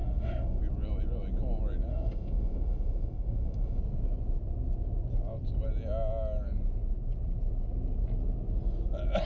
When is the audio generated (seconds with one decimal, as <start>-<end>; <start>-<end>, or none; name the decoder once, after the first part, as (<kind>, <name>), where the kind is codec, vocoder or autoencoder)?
0.0-0.6 (autoencoder, DAC-VAE); 1.9-3.8